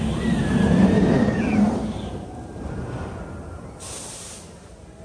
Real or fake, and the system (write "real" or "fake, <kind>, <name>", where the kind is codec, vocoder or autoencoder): real